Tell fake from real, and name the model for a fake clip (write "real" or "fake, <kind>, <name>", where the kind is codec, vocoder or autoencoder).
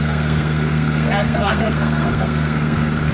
fake, codec, SNAC